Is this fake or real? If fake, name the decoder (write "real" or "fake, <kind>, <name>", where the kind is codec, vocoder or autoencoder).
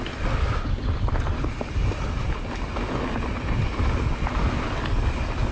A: real